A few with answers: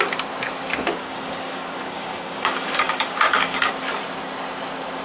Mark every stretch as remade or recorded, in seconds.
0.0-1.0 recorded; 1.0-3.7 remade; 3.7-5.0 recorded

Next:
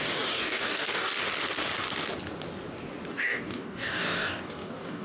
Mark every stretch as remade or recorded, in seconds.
0.0-1.2 remade; 1.2-3.1 recorded; 3.1-5.0 remade